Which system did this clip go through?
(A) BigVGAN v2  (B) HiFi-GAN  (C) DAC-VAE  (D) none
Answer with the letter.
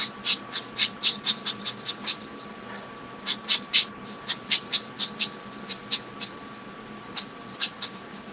D